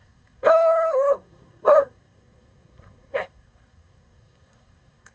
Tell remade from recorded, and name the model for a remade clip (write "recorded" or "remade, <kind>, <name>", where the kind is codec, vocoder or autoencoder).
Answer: remade, codec, SNAC